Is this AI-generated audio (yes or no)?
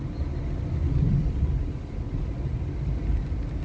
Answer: no